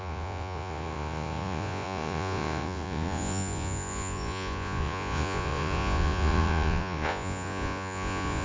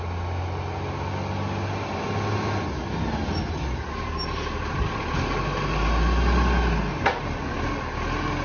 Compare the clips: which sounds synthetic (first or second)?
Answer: first